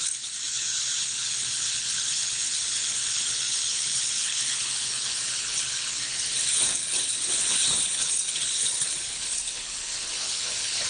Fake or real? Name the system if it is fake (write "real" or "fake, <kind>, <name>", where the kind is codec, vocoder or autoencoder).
fake, codec, HILCodec